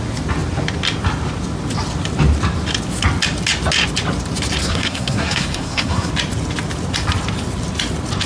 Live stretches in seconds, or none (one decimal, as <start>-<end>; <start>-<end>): 0.0-4.6; 6.1-8.3